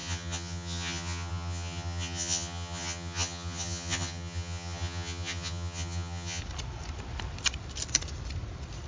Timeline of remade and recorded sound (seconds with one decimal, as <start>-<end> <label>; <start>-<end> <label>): 0.0-6.4 remade; 6.4-8.9 recorded